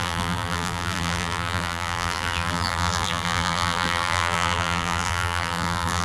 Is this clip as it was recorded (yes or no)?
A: no